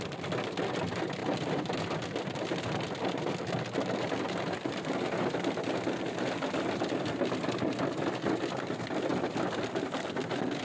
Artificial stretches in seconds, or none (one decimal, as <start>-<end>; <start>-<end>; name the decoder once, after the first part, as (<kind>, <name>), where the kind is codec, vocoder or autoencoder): none